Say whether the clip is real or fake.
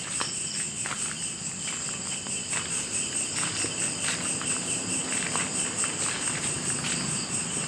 real